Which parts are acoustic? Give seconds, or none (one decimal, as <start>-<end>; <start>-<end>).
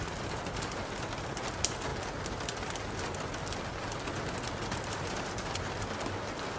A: 0.0-6.6